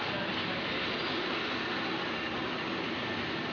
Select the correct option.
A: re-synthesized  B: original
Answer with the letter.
B